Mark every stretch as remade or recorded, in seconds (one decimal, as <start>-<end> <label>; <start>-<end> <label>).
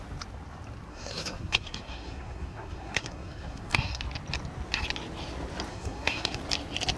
0.0-0.9 recorded; 0.9-4.0 remade; 4.0-5.7 recorded; 5.7-6.4 remade; 6.4-7.0 recorded